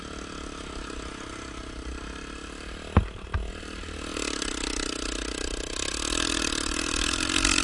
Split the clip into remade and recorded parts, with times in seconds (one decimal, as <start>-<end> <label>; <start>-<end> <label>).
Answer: 0.0-7.6 recorded